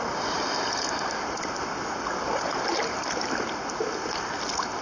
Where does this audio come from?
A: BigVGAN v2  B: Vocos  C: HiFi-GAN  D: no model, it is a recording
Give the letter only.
D